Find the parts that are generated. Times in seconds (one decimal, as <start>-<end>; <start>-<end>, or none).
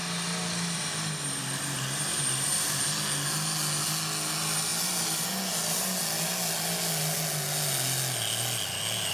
0.0-2.8